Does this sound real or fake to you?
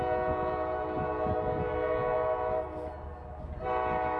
real